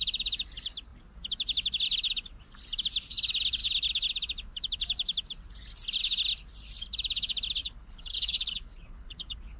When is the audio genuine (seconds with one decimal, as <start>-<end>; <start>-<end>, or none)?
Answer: 0.0-7.6